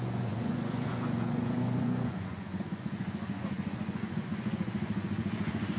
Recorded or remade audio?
remade